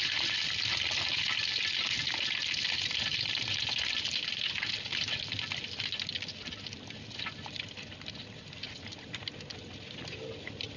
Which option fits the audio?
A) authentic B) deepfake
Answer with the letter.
A